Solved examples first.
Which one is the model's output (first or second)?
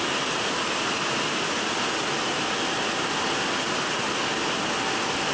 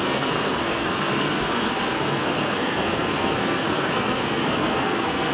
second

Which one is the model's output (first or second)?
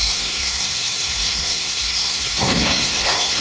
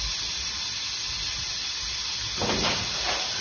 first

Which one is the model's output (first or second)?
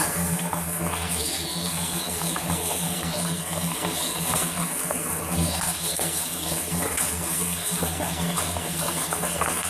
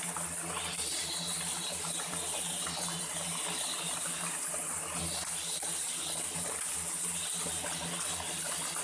first